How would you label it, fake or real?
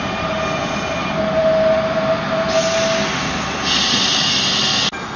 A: real